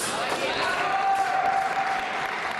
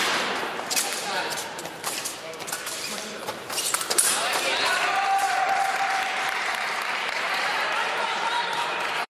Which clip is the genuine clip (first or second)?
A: first